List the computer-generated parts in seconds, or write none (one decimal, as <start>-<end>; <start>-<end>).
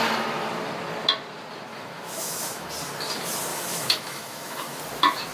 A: 1.7-2.7; 3.5-4.8